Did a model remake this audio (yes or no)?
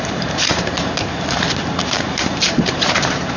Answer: yes